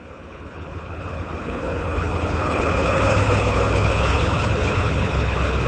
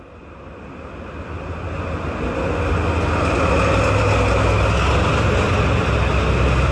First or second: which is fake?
first